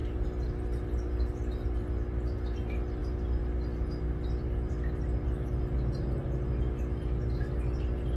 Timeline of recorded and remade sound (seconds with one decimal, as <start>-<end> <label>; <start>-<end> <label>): 0.0-1.8 remade; 1.8-3.0 recorded; 3.0-4.7 remade; 4.7-8.2 recorded